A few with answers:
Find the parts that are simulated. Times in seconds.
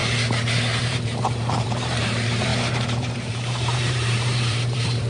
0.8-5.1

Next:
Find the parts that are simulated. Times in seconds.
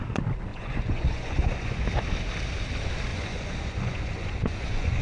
0.5-1.8; 3.1-5.0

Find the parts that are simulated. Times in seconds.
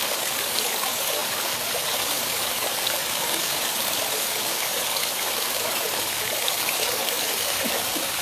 0.0-8.2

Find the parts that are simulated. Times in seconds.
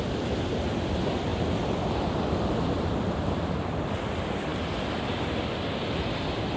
none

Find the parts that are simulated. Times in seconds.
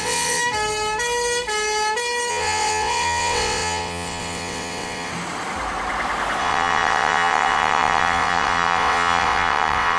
0.0-0.4; 2.3-5.1; 6.4-10.0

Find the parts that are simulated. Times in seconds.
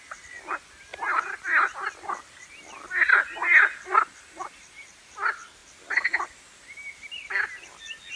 none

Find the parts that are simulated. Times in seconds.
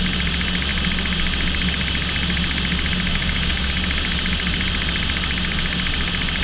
3.1-3.7